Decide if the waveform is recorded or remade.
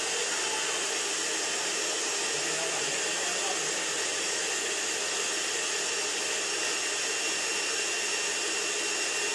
recorded